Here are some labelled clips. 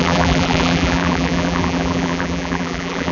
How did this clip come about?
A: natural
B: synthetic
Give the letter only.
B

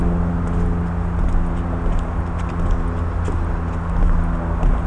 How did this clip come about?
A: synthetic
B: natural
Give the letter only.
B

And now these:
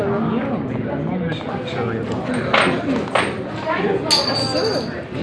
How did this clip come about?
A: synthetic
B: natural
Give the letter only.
B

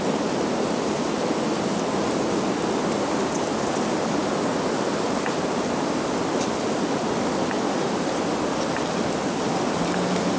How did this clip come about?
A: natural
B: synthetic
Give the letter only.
A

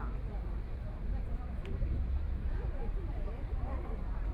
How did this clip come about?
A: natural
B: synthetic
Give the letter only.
B